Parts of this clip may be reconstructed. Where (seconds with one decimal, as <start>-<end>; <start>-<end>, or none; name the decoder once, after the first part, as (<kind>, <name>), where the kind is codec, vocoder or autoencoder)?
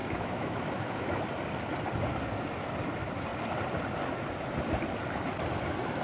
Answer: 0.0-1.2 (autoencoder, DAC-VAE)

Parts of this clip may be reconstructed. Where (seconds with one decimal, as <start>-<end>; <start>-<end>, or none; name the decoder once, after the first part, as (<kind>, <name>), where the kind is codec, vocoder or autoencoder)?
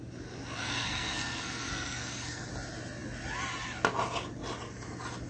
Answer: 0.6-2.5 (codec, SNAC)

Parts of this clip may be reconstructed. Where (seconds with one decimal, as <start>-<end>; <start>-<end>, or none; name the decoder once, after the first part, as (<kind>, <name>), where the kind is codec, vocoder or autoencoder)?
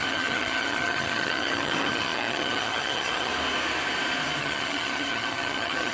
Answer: 0.0-3.3 (vocoder, HiFi-GAN); 4.4-5.9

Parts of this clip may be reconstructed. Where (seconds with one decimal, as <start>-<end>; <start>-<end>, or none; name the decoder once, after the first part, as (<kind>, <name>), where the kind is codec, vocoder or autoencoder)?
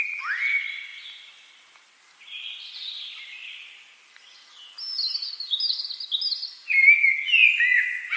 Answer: none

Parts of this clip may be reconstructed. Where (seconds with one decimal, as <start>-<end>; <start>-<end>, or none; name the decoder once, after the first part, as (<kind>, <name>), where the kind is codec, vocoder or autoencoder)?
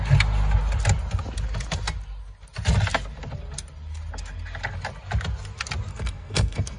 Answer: 5.9-6.8 (codec, SNAC)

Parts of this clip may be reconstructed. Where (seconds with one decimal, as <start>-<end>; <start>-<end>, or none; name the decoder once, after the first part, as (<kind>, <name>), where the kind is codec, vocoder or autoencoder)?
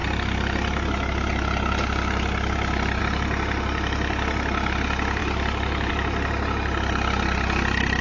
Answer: none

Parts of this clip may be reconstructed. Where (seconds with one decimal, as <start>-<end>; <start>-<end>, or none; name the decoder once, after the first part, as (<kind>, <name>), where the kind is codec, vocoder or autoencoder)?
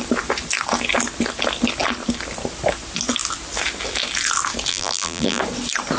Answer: 4.7-5.4 (vocoder, BigVGAN v2)